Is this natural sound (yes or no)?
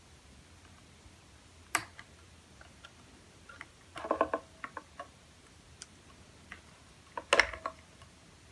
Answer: yes